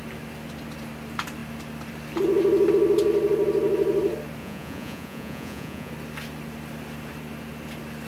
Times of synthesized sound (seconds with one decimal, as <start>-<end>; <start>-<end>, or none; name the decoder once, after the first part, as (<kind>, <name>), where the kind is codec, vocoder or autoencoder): 4.4-5.9 (vocoder, Vocos)

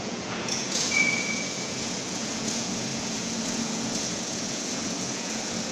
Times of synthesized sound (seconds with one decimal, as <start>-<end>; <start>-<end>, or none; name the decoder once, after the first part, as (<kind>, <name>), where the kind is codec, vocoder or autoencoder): 0.0-5.7 (vocoder, Vocos)

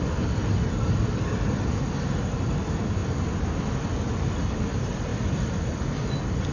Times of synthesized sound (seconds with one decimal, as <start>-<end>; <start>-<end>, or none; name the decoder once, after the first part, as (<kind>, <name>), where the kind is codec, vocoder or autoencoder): none

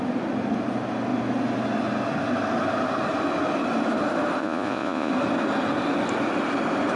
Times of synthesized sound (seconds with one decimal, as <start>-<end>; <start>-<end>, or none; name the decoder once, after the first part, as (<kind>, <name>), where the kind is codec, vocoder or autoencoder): 4.4-5.1 (vocoder, Vocos)